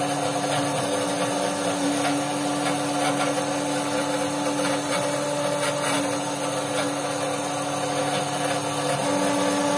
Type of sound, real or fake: real